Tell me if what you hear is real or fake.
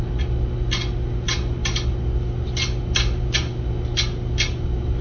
real